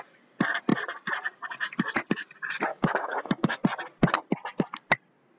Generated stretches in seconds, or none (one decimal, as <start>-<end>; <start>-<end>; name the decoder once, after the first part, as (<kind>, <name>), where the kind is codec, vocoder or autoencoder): 2.7-3.6 (codec, DAC)